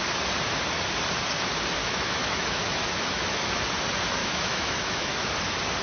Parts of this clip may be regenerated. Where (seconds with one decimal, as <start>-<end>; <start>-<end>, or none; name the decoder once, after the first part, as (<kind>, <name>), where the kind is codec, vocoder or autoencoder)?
1.8-3.6 (autoencoder, DAC-VAE); 4.2-5.3